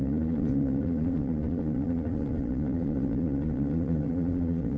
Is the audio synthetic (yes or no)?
yes